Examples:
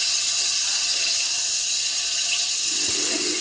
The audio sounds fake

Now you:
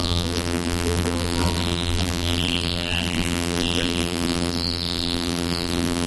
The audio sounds fake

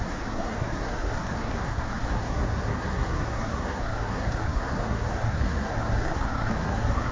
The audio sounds fake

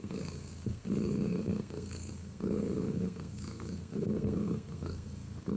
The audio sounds fake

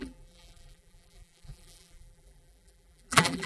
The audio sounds fake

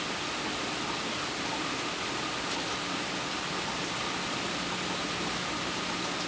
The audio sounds real